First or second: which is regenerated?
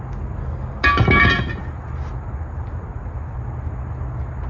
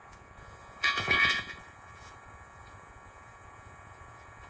second